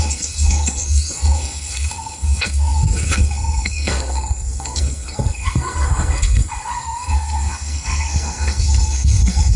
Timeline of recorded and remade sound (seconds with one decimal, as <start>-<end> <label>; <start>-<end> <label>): 0.0-9.6 remade